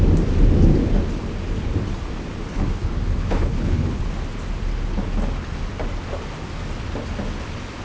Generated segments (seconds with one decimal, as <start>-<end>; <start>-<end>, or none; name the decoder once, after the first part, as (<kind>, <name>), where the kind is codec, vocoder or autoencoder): 2.5-4.0 (codec, HILCodec)